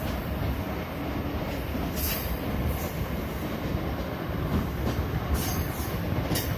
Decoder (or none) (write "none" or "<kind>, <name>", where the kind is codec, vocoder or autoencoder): none